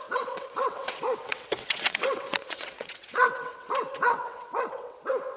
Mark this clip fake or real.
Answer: fake